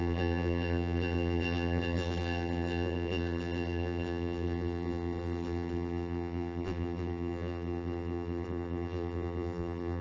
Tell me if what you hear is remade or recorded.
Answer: remade